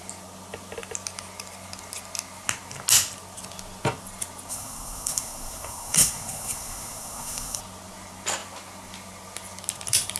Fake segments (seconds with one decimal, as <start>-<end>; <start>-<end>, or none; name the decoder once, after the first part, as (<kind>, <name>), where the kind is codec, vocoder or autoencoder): 4.5-7.6 (codec, SNAC)